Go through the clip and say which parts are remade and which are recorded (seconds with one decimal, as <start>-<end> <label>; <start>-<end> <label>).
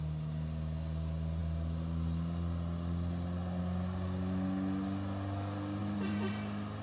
0.0-5.8 recorded; 5.8-6.3 remade; 6.3-6.8 recorded